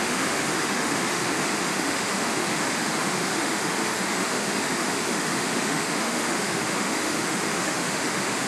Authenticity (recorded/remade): remade